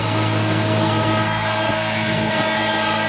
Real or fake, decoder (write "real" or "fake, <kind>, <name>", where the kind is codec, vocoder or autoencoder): fake, codec, SNAC